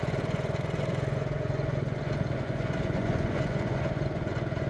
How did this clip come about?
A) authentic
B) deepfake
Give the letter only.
B